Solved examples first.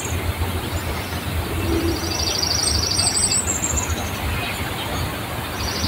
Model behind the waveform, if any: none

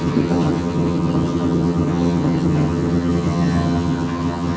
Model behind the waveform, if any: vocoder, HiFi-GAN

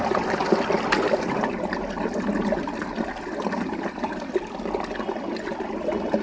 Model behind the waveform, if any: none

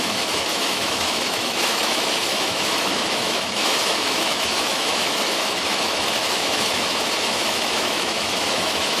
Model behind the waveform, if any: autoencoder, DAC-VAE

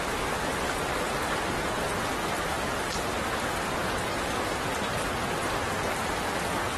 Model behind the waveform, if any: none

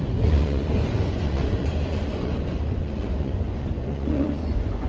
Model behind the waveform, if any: vocoder, Vocos